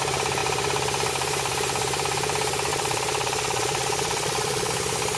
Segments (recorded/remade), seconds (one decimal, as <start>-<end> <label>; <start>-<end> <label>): 0.0-2.7 recorded; 2.7-4.7 remade; 4.7-5.2 recorded